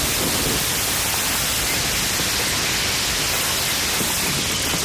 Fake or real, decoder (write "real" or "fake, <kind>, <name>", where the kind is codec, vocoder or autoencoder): real